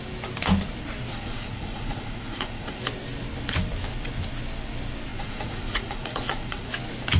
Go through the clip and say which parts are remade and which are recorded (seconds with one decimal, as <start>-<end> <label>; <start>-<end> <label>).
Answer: 0.0-1.1 recorded; 1.1-2.8 remade; 2.8-5.1 recorded; 5.1-6.7 remade; 6.7-7.2 recorded